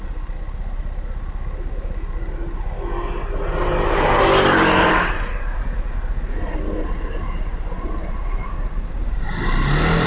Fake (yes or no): no